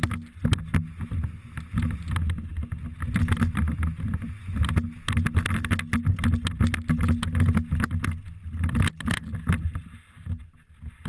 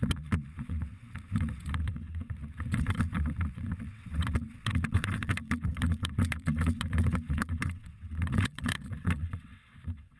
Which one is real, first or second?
first